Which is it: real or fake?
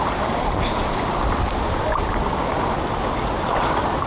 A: real